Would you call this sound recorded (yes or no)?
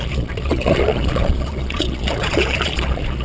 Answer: no